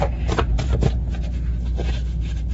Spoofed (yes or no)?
no